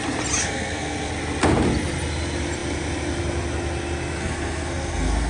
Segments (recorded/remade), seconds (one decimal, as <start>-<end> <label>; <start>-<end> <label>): 0.0-0.4 recorded; 0.4-1.1 remade; 1.1-4.2 recorded; 4.2-5.3 remade